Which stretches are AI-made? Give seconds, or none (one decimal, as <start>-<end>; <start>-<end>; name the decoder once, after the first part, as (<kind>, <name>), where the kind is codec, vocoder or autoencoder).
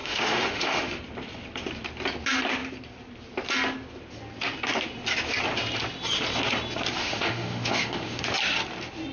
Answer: 0.0-1.0 (autoencoder, DAC-VAE); 7.0-8.2